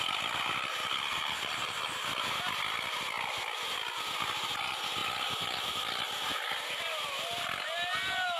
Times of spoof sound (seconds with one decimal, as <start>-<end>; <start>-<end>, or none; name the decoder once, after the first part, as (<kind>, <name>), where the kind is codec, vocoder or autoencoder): none